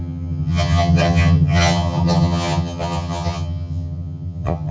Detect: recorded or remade remade